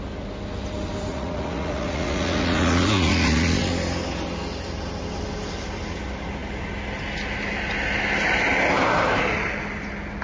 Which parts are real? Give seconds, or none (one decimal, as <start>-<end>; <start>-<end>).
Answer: 0.0-1.1; 3.7-10.2